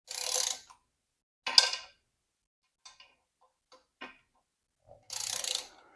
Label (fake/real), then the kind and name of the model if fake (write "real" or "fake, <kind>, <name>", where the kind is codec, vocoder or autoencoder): real